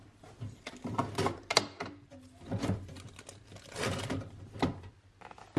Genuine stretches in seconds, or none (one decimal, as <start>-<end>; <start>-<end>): 0.0-5.6